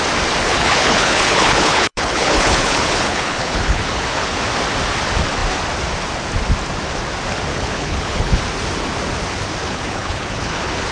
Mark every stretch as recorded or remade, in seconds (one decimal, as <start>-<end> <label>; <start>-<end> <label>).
0.0-0.4 recorded; 0.4-4.4 remade; 4.4-7.5 recorded; 7.5-8.4 remade; 8.4-9.6 recorded; 9.6-10.9 remade